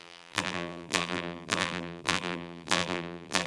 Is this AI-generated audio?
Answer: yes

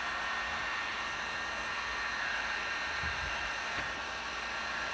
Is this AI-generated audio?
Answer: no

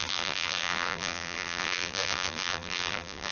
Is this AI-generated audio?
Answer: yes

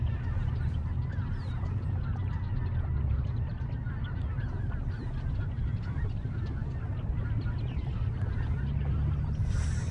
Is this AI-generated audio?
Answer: no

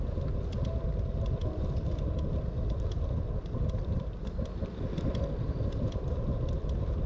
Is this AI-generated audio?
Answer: no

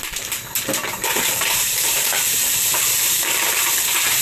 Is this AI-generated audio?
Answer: yes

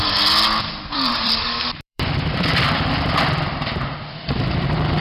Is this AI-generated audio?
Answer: yes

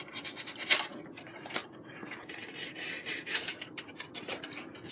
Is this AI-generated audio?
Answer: yes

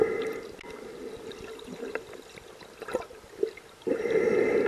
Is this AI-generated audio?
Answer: no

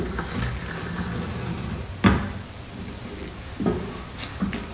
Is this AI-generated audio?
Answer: no